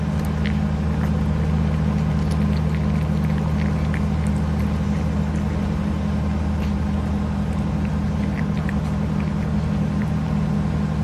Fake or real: real